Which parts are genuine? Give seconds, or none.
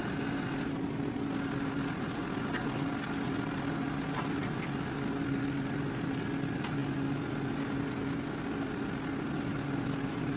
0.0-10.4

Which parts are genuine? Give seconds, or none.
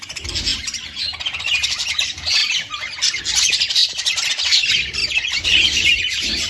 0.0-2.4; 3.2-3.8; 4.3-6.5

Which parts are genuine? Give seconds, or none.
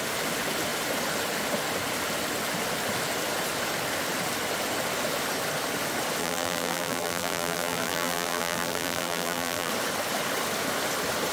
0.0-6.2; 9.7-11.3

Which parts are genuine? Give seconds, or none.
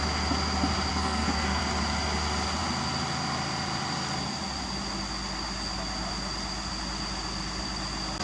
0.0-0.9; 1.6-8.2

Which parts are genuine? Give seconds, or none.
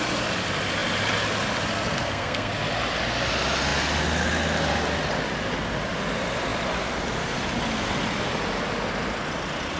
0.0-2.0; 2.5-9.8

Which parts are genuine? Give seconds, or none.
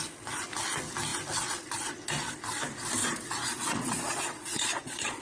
0.0-3.0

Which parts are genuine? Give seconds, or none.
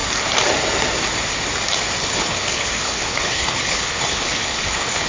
0.0-2.0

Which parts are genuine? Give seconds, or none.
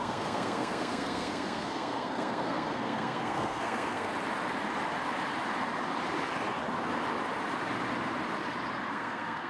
4.1-8.9